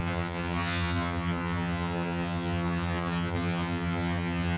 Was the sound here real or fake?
fake